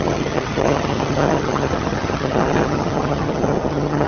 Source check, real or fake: fake